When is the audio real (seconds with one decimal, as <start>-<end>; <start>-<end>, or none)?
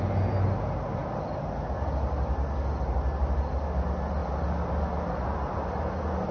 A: 0.0-6.3